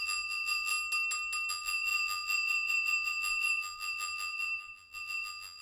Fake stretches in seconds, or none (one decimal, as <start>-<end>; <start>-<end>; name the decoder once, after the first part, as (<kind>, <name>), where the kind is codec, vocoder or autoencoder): 0.0-0.7 (vocoder, BigVGAN v2); 1.5-5.6